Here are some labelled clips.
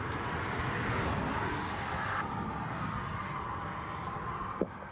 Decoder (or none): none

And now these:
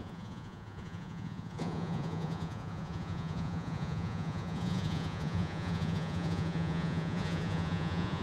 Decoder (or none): vocoder, Vocos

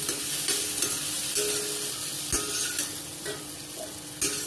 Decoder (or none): none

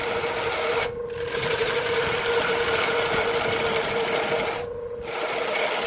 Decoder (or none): none